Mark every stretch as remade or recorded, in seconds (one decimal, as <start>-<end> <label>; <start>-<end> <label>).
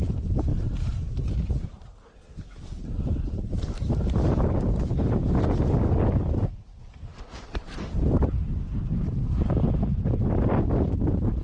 0.0-0.5 recorded; 0.5-2.2 remade; 2.2-2.8 recorded; 2.8-4.0 remade; 4.0-7.1 recorded; 7.1-9.5 remade; 9.5-11.4 recorded